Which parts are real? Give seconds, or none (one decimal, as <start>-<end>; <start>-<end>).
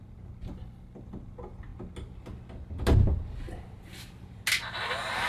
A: 0.0-5.3